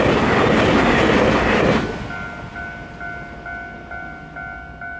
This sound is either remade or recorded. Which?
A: recorded